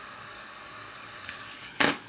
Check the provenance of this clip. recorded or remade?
remade